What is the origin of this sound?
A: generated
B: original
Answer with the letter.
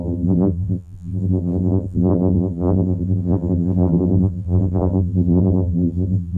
A